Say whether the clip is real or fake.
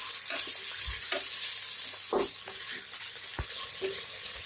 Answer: real